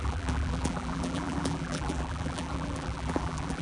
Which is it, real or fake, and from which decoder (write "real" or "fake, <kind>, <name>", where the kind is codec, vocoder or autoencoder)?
fake, vocoder, BigVGAN v2